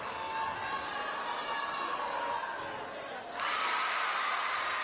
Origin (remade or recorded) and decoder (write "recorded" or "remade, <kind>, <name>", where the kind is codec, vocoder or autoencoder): recorded